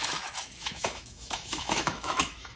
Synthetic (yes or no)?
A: yes